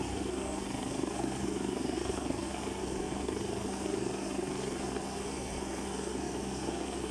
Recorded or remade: remade